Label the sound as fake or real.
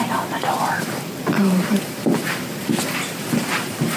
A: fake